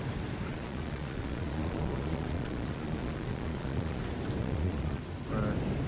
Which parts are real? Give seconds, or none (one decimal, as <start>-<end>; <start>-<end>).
0.0-0.5; 4.0-4.4; 5.0-5.9